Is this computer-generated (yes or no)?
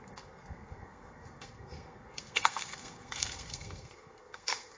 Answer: yes